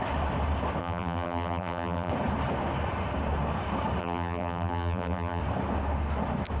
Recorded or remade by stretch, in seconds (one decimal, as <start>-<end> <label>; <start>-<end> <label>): 0.0-0.8 recorded; 0.8-2.1 remade; 2.1-4.0 recorded; 4.0-5.4 remade; 5.4-6.6 recorded